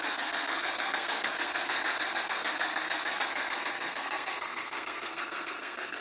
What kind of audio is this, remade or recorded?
remade